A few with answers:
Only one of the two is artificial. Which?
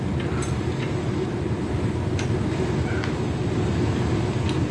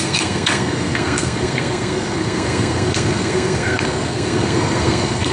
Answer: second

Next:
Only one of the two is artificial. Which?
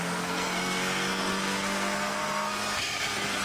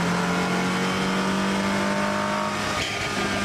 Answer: first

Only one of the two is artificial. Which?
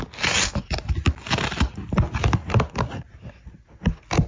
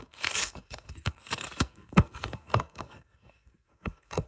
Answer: second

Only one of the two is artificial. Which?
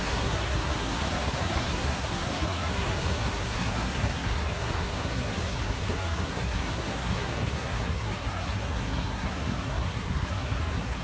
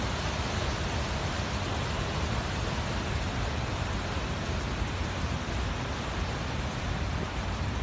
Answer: first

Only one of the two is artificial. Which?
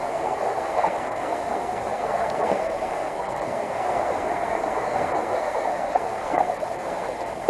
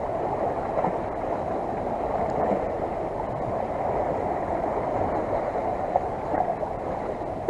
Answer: first